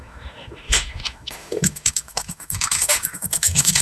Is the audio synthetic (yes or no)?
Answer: yes